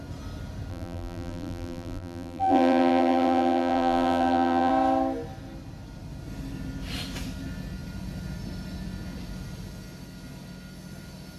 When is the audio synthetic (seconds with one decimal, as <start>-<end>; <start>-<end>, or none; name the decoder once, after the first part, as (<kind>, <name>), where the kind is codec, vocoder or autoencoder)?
0.7-4.7 (vocoder, BigVGAN v2)